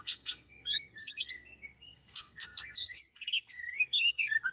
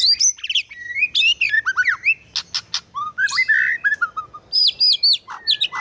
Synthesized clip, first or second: first